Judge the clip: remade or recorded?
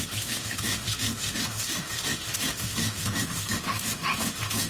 remade